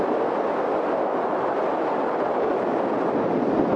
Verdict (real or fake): real